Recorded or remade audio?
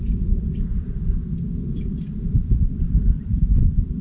remade